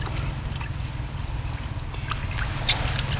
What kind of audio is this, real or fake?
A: real